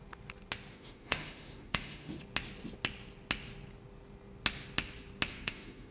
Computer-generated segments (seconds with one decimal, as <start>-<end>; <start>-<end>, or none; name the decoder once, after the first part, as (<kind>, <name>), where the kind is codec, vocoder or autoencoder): 0.7-2.2 (autoencoder, DAC-VAE); 5.3-5.9